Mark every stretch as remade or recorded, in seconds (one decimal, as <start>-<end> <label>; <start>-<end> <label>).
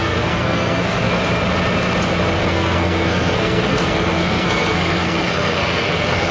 0.0-1.1 remade; 1.1-2.4 recorded; 2.4-6.3 remade